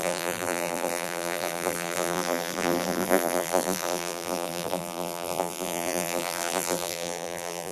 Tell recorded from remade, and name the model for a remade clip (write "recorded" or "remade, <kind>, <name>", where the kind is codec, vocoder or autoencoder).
remade, vocoder, BigVGAN v2